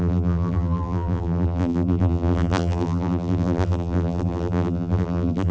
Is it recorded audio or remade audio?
remade